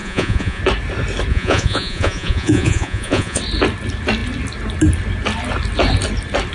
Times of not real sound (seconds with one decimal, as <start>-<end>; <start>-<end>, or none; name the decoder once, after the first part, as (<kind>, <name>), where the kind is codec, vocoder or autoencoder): 0.0-0.6 (vocoder, Vocos); 1.3-3.4